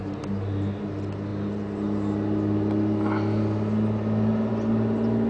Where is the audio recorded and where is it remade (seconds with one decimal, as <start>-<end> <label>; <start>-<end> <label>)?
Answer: 0.0-5.3 recorded